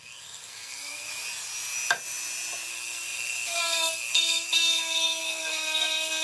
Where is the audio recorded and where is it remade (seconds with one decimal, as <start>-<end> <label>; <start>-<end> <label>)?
0.0-1.1 remade; 1.1-2.7 recorded; 2.7-6.2 remade

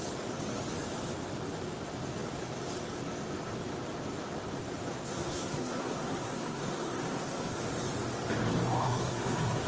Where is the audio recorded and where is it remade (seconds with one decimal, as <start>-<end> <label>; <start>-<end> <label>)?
0.0-4.9 recorded; 4.9-7.6 remade; 7.6-8.8 recorded; 8.8-9.7 remade

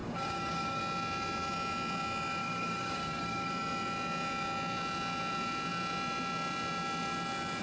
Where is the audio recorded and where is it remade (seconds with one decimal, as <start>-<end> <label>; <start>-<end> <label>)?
0.0-0.8 remade; 0.8-2.4 recorded; 2.4-3.5 remade; 3.5-7.6 recorded

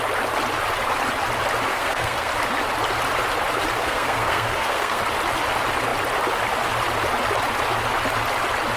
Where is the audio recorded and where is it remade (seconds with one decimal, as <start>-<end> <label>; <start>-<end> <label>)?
0.0-1.7 recorded; 1.7-2.3 remade; 2.3-3.8 recorded; 3.8-5.0 remade; 5.0-8.8 recorded

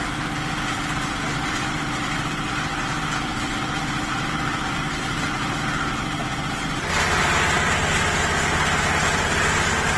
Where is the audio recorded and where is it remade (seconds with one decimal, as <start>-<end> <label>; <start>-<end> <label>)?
0.0-10.0 recorded

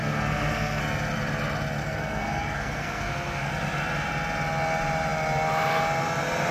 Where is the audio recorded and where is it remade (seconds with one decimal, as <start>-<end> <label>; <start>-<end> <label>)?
0.0-0.8 remade; 0.8-1.8 recorded; 1.8-3.5 remade; 3.5-6.5 recorded